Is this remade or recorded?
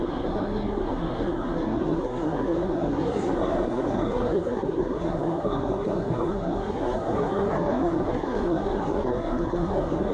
remade